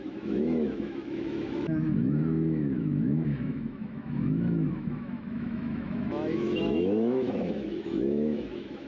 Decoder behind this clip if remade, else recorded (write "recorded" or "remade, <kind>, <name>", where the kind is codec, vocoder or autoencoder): remade, autoencoder, DAC-VAE